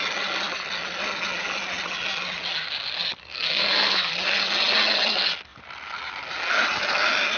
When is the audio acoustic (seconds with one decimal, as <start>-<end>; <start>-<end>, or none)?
0.0-3.2; 4.1-7.4